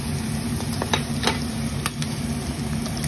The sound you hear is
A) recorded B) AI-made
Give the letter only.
A